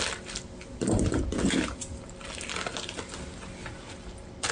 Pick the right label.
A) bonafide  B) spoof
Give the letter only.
A